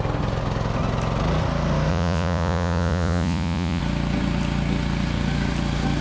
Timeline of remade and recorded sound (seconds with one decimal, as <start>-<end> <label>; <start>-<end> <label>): 0.0-1.9 recorded; 1.9-3.8 remade; 3.8-6.0 recorded

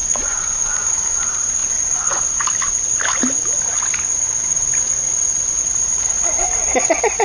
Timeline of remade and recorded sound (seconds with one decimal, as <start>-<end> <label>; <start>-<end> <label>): 0.0-0.9 remade; 0.9-1.6 recorded; 1.6-2.2 remade; 2.2-7.2 recorded

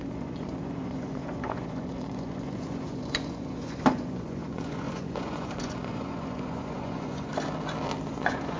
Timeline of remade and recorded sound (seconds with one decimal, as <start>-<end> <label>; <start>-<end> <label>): 0.0-7.3 remade; 7.3-8.1 recorded; 8.1-8.6 remade

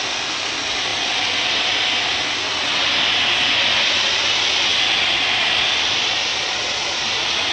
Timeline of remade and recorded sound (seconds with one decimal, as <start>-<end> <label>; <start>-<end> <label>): 0.0-6.3 recorded; 6.3-7.0 remade; 7.0-7.5 recorded

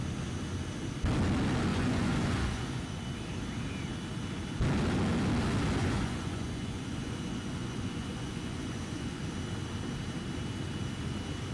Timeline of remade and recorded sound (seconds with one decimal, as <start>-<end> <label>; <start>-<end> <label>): 0.0-1.7 recorded; 1.7-2.8 remade; 2.8-5.8 recorded; 5.8-9.2 remade; 9.2-11.5 recorded

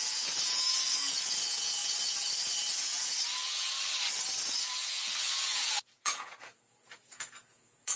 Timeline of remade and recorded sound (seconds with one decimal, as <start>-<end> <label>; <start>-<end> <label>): 0.0-1.8 remade; 1.8-2.8 recorded; 2.8-3.7 remade; 3.7-4.5 recorded; 4.5-8.0 remade